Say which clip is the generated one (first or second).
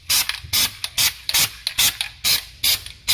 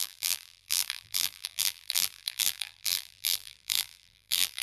second